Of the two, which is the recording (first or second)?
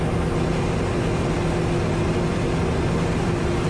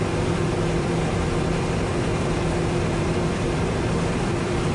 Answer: first